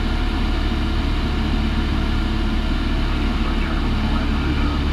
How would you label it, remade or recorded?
recorded